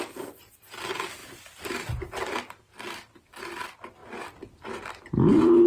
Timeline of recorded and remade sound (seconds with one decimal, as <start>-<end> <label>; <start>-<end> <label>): 0.0-5.7 recorded